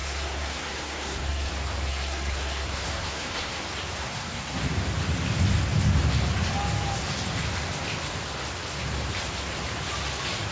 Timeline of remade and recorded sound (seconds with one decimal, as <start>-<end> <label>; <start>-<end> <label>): 0.0-1.5 remade; 1.5-1.9 recorded; 1.9-3.6 remade; 3.6-4.0 recorded; 4.0-4.6 remade; 4.6-10.5 recorded